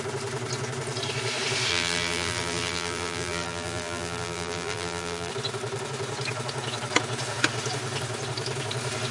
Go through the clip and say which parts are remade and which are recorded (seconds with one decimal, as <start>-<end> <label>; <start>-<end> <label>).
0.0-1.7 recorded; 1.7-5.3 remade; 5.3-9.1 recorded